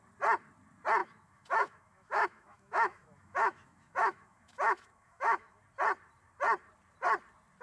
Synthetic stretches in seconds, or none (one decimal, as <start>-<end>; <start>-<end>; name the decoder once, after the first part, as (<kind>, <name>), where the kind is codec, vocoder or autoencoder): 1.0-5.6 (autoencoder, DAC-VAE)